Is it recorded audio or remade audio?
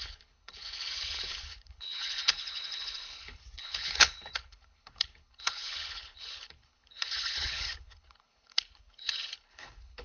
remade